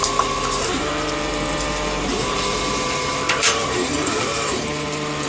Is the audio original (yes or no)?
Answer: no